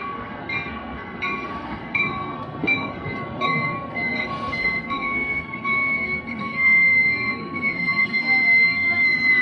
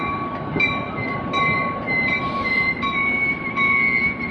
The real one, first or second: second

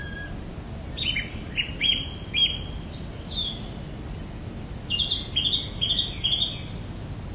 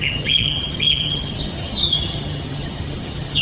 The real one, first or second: first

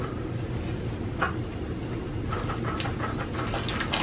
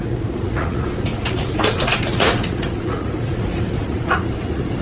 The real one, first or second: first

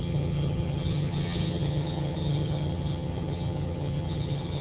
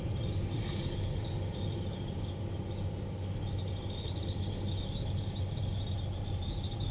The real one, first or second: second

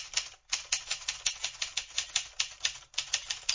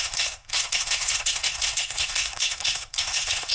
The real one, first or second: first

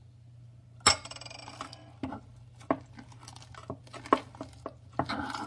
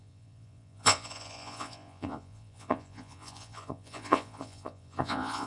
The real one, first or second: first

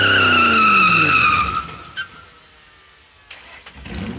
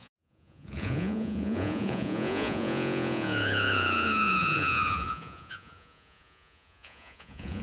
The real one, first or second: first